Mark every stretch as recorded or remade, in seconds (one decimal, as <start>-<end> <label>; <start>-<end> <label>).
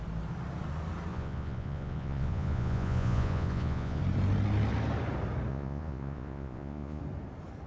0.0-1.1 recorded; 1.1-4.0 remade; 4.0-5.5 recorded; 5.5-7.0 remade; 7.0-7.7 recorded